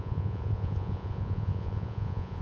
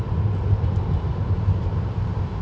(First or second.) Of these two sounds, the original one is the second